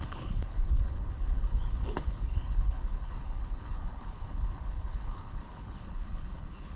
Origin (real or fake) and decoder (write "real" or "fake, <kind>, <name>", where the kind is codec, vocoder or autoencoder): fake, codec, HILCodec